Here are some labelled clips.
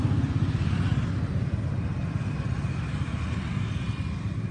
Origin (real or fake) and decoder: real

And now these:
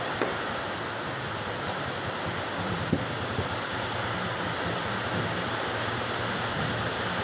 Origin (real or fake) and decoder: real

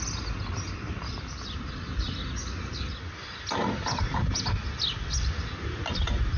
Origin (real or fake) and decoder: real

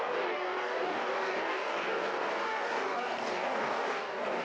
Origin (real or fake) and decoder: fake, codec, DAC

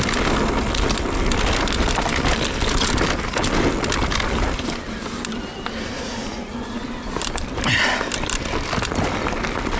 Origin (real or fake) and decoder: real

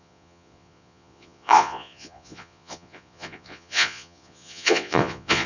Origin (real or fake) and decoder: fake, vocoder, Vocos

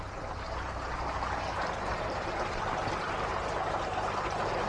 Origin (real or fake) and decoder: real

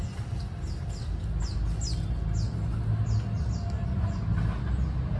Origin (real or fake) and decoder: real